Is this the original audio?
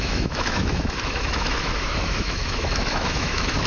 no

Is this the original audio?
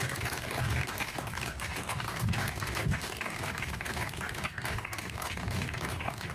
no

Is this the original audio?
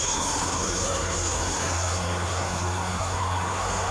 no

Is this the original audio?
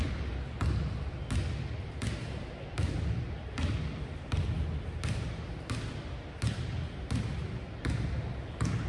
yes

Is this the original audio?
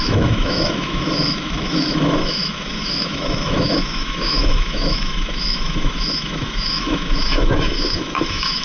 no